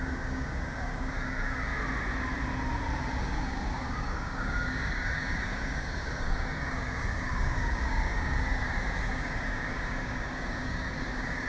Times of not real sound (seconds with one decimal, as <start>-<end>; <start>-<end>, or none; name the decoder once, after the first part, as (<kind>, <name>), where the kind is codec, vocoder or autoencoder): 0.0-1.7 (codec, DAC); 3.2-11.5